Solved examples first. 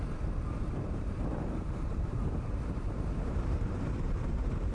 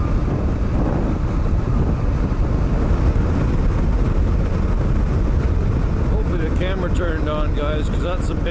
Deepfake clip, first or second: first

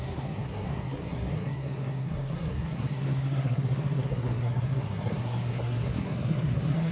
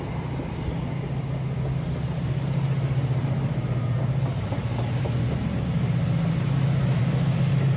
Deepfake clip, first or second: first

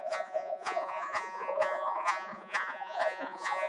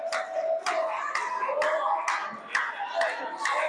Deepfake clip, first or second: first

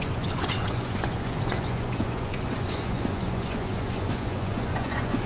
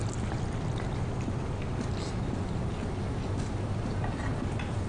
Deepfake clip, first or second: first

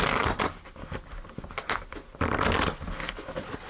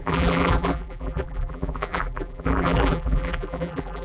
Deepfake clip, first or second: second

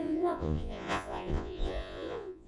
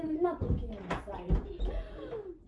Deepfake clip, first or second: first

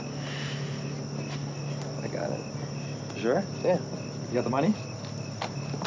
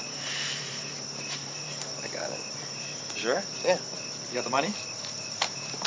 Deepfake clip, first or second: second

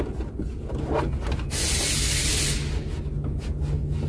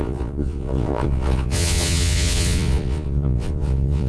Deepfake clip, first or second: second